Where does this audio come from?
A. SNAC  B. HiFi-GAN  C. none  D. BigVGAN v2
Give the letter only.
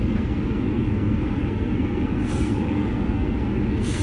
A